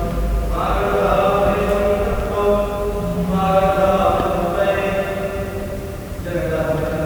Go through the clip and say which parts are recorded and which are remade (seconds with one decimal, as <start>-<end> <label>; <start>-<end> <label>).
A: 0.0-0.9 recorded; 0.9-1.6 remade; 1.6-3.1 recorded; 3.1-7.1 remade